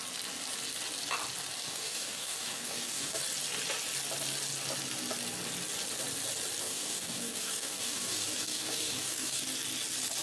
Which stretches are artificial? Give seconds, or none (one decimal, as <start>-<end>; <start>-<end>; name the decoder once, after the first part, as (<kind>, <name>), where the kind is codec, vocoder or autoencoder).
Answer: 1.6-3.2 (codec, DAC); 6.6-9.4